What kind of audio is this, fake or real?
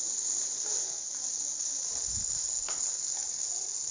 real